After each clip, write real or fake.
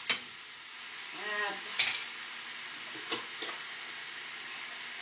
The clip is real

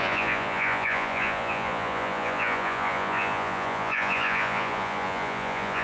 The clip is fake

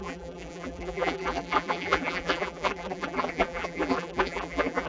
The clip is fake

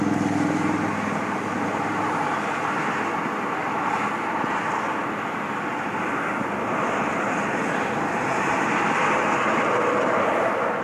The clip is real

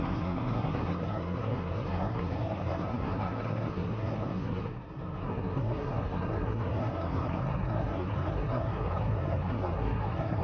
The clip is fake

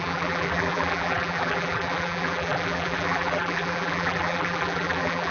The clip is fake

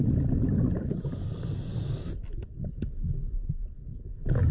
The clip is real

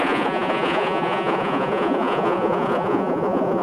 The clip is fake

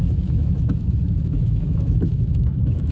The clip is fake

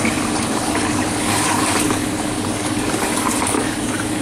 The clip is fake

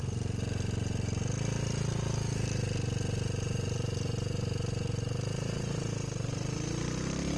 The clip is real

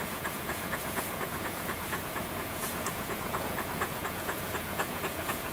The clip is fake